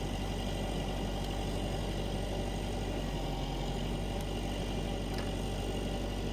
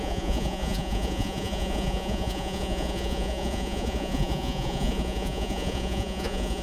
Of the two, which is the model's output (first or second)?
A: second